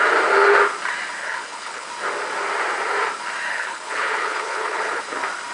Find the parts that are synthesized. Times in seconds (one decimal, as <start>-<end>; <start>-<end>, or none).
1.2-1.9; 3.5-5.0